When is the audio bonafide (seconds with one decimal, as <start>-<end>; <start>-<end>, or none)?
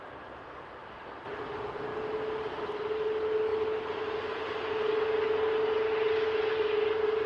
0.0-7.3